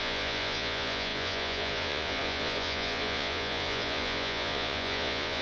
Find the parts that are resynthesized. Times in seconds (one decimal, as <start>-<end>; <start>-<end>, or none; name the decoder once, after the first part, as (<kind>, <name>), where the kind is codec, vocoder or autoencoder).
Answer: 0.0-5.4 (vocoder, Vocos)

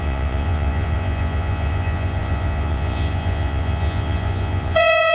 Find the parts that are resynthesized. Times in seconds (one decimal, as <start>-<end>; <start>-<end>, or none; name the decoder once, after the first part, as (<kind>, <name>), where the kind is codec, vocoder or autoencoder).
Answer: 0.0-5.1 (vocoder, Vocos)

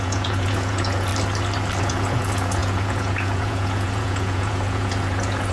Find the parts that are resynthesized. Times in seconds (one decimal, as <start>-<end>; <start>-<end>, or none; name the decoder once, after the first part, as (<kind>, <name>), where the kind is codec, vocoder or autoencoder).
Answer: 0.0-1.1 (vocoder, Vocos); 1.8-5.5

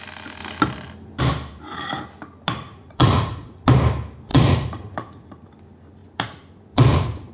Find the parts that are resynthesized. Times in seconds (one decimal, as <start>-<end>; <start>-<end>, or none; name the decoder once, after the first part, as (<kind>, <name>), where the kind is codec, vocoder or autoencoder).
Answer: 2.7-3.6 (vocoder, Vocos); 4.3-5.5; 6.0-7.3

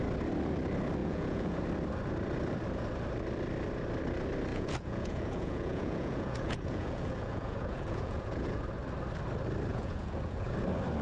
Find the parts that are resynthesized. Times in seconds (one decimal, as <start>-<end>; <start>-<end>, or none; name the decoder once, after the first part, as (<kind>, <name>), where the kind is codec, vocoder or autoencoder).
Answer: 1.0-1.6 (vocoder, Vocos); 4.5-8.6; 9.7-10.5

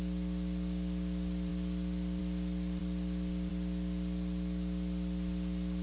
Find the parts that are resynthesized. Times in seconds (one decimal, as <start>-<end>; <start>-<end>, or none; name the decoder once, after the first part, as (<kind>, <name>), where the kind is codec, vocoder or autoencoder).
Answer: none

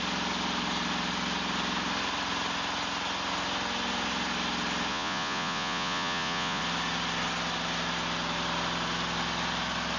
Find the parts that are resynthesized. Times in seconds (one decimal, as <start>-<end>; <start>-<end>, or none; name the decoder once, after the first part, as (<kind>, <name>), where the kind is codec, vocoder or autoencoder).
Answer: 4.9-6.6 (vocoder, Vocos)